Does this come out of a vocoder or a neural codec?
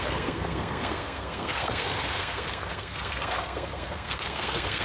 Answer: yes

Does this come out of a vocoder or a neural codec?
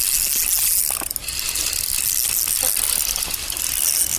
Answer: no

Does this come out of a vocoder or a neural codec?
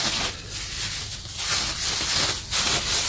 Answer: no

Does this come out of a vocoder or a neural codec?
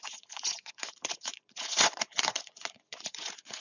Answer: yes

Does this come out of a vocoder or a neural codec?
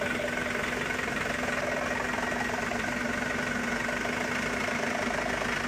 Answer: no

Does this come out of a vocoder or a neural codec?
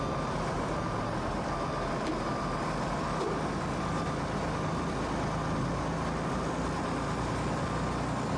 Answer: no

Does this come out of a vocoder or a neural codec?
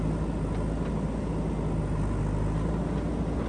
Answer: no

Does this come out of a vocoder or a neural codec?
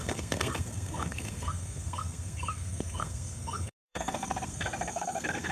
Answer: yes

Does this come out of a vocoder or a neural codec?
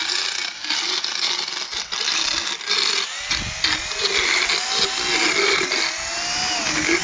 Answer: no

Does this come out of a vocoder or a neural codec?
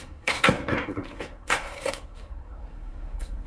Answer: yes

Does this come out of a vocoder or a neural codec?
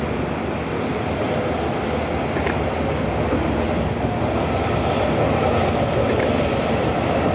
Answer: no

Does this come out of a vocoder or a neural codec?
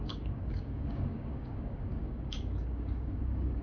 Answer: yes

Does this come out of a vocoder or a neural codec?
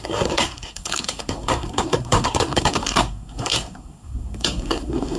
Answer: yes